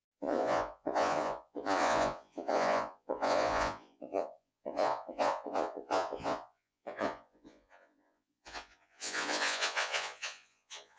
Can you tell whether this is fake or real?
fake